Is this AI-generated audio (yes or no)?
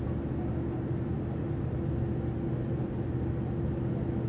no